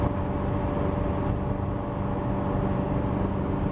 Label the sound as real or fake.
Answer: real